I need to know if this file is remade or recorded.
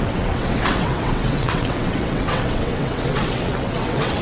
remade